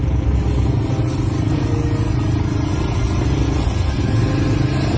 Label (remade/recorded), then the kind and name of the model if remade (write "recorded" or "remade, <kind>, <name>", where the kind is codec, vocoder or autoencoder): recorded